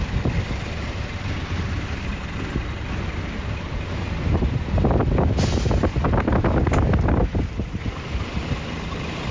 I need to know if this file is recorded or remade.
recorded